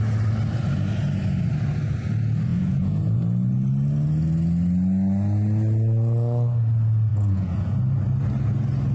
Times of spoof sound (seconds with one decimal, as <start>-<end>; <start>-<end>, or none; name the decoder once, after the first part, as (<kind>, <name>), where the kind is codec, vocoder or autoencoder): 2.5-3.2 (vocoder, Vocos); 7.1-7.7